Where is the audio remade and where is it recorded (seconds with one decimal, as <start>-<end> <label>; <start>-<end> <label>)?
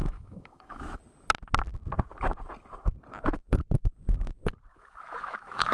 0.0-1.0 remade; 1.0-4.7 recorded; 4.7-5.7 remade